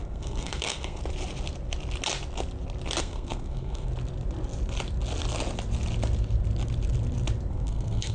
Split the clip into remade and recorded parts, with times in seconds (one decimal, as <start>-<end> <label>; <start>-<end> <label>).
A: 0.0-1.0 remade; 1.0-3.0 recorded; 3.0-3.9 remade; 3.9-7.5 recorded; 7.5-8.1 remade